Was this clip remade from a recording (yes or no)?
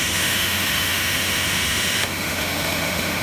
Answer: yes